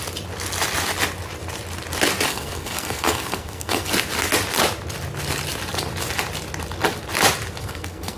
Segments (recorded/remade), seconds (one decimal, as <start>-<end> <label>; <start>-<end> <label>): 0.0-2.3 recorded; 2.3-3.9 remade; 3.9-7.6 recorded; 7.6-8.2 remade